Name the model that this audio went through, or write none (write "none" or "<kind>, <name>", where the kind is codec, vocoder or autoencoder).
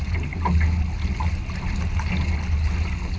none